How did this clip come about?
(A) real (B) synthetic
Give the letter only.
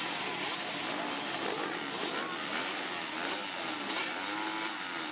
A